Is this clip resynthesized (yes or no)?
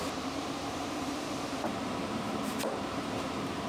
yes